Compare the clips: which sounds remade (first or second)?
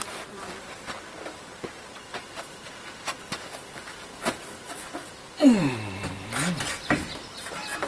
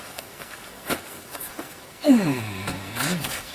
second